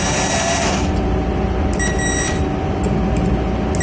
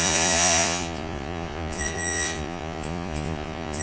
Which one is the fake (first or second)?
second